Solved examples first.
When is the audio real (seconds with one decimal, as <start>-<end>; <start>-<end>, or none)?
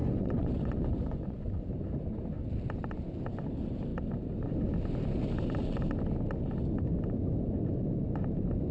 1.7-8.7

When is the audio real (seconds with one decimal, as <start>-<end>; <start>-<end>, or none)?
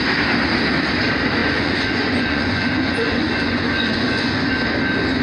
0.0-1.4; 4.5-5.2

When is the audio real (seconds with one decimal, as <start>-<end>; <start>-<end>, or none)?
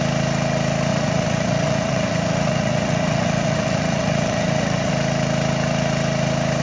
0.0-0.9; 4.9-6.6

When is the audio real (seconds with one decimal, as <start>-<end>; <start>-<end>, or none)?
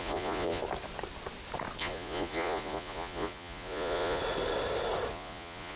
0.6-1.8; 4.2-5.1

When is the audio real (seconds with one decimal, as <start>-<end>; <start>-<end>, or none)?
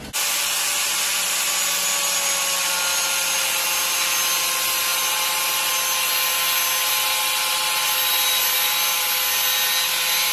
0.0-10.3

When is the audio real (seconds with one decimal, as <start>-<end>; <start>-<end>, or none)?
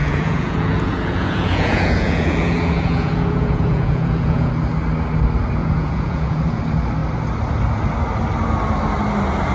4.5-5.6; 6.6-9.5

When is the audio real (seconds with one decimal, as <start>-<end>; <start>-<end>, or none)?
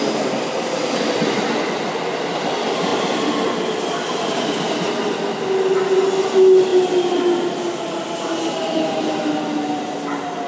0.0-10.5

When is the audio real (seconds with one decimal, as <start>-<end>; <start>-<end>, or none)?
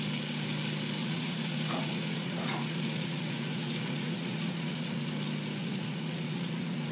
0.0-1.0; 5.1-5.6